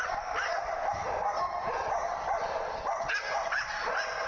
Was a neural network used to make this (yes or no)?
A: yes